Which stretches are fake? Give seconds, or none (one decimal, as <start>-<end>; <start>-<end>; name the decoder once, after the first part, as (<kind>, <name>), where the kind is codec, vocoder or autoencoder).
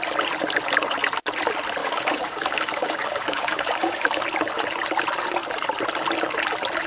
1.8-4.2 (codec, DAC)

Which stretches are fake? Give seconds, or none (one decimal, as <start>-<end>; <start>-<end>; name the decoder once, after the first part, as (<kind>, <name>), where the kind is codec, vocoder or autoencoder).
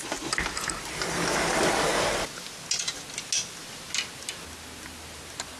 none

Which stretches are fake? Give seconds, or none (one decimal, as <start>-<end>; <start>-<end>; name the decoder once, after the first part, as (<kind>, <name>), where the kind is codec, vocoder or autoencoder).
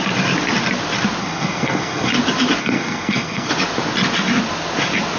1.2-2.1 (codec, SNAC); 2.6-3.5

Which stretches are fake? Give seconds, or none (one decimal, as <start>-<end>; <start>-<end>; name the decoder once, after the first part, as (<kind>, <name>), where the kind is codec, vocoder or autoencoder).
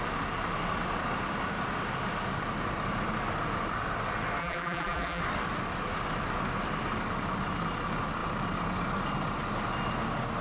4.4-5.2 (vocoder, BigVGAN v2)